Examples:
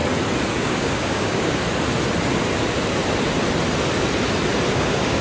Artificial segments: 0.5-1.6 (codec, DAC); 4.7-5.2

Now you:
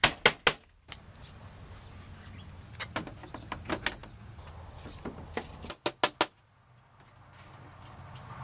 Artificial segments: none

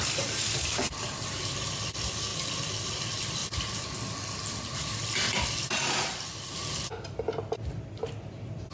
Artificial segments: none

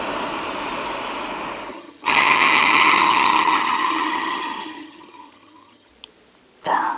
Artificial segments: 1.7-5.9 (vocoder, HiFi-GAN)

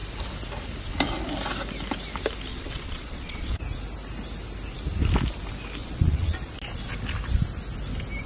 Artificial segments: 2.5-3.6 (vocoder, Vocos); 5.8-6.5

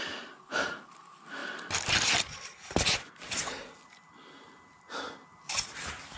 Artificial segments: none

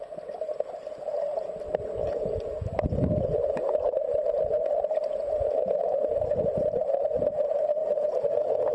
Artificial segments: 7.8-8.7 (vocoder, Vocos)

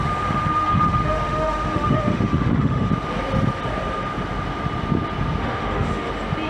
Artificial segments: 0.0-2.9 (autoencoder, DAC-VAE); 5.4-6.1